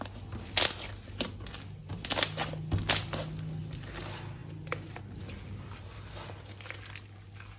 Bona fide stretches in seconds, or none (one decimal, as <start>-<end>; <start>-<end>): 0.0-7.6